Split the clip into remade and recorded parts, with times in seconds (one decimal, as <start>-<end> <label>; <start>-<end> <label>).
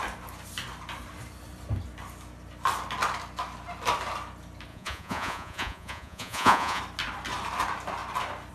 0.0-4.7 recorded; 4.7-6.8 remade; 6.8-8.5 recorded